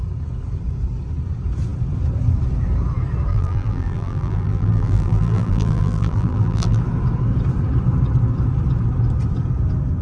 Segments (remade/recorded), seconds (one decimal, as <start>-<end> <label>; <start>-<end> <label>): 0.0-3.3 recorded; 3.3-6.8 remade; 6.8-10.0 recorded